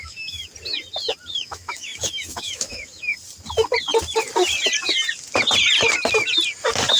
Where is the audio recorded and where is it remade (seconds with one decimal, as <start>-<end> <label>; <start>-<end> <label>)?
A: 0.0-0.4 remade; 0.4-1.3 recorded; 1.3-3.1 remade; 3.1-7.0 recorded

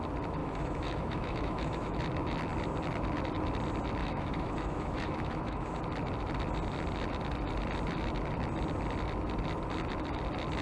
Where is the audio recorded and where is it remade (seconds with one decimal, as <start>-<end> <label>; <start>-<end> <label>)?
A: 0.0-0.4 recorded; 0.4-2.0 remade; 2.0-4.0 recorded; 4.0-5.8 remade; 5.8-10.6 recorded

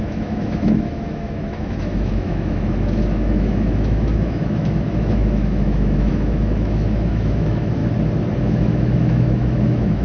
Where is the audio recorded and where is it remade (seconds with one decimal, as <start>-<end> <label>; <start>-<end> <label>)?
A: 0.0-7.8 remade; 7.8-8.4 recorded; 8.4-10.0 remade

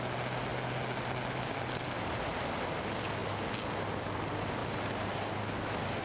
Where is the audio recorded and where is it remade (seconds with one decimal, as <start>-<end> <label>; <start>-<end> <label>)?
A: 0.0-6.0 recorded